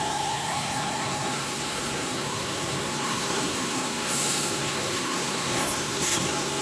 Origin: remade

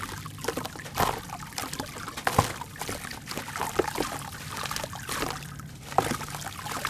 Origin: recorded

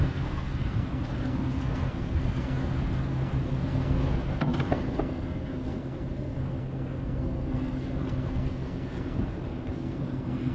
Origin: remade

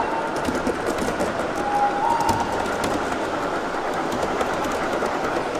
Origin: recorded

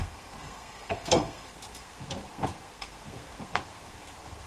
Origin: remade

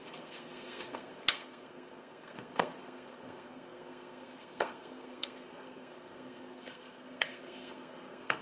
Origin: remade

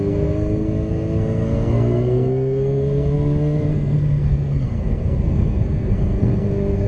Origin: remade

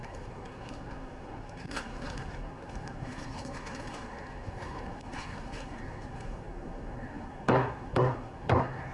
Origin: remade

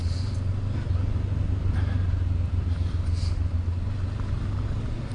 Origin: recorded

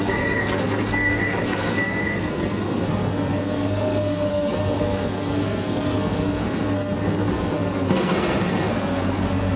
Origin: remade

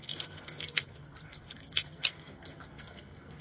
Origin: remade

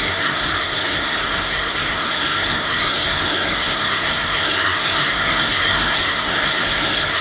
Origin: remade